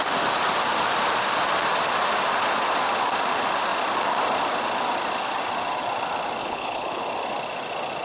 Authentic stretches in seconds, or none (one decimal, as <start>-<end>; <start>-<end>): 0.0-6.4; 7.0-8.0